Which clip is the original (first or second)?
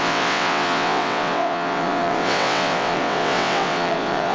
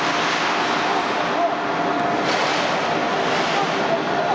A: second